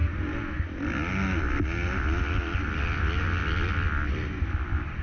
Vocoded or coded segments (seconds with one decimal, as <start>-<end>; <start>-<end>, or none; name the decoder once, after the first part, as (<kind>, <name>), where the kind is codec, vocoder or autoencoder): none